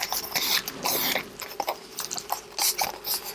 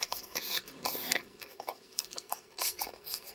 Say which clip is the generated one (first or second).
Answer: second